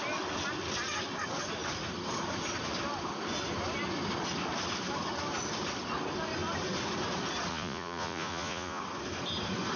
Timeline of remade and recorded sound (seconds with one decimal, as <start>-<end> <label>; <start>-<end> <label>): 0.0-7.5 recorded; 7.5-8.8 remade; 8.8-9.8 recorded